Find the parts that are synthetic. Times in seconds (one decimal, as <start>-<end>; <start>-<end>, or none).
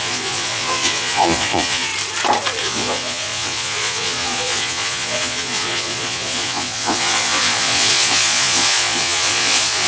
0.0-1.9; 2.6-9.9